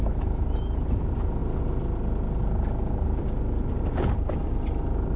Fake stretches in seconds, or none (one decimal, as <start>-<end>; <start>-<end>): none